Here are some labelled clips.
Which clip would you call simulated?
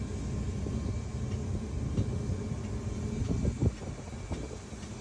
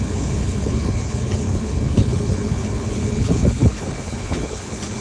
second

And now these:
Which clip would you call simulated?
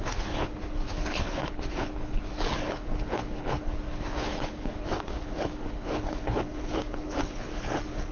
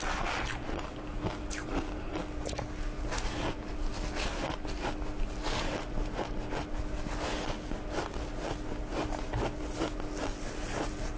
first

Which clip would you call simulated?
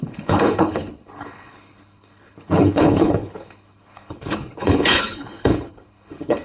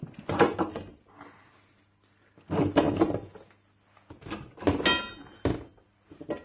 first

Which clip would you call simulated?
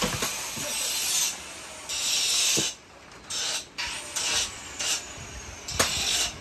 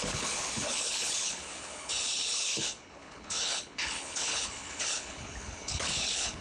second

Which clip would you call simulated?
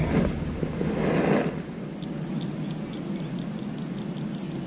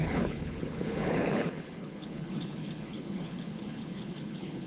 second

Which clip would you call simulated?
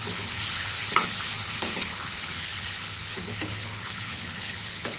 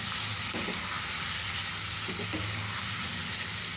first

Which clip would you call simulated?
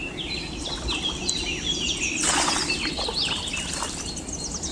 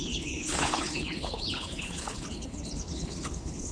second